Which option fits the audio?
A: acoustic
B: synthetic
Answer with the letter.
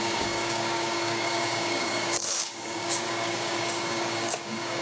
B